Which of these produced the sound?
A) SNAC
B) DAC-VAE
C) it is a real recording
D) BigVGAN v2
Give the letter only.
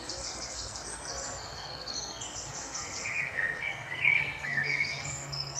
A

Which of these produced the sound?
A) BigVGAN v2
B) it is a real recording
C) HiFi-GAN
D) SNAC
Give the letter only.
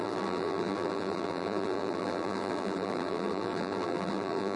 A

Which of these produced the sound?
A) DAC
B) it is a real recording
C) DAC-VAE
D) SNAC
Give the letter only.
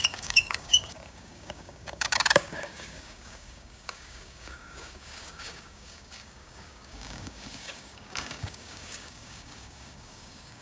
A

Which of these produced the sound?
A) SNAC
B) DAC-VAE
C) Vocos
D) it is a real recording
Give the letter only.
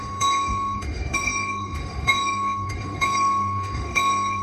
B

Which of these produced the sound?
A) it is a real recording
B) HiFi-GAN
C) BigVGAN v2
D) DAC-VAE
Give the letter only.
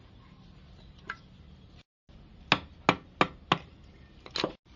A